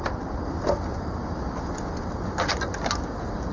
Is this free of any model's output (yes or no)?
yes